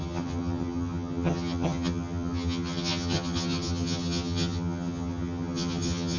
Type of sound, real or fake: fake